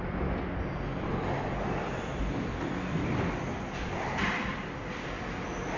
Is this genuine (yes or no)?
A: yes